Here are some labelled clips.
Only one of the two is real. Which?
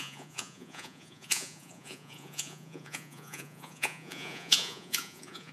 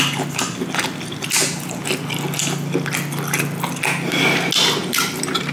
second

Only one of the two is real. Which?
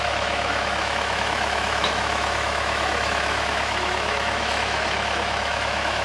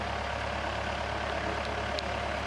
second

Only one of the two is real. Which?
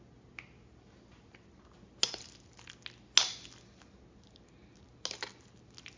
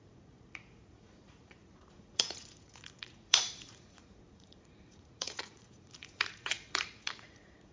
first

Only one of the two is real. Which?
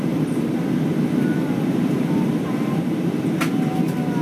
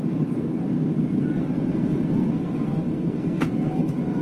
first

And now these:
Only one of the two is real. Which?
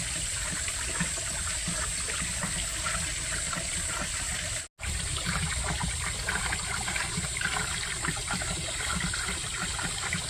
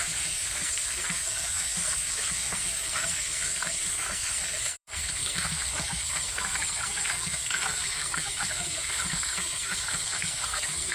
first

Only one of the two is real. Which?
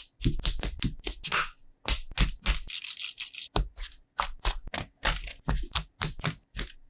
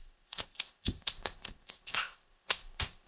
first